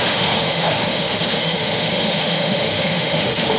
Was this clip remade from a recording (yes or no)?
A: yes